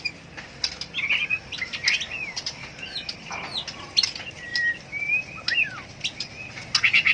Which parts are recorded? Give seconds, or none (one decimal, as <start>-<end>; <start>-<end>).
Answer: 0.0-7.1